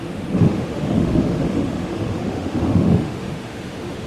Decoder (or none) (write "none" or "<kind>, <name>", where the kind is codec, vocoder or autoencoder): autoencoder, DAC-VAE